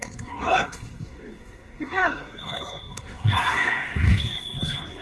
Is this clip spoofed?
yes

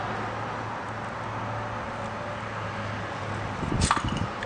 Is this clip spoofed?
no